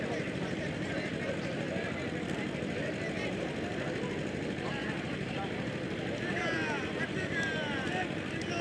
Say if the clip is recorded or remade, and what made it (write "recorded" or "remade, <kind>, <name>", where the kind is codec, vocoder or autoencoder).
recorded